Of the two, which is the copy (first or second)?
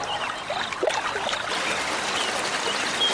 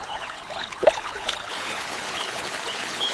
second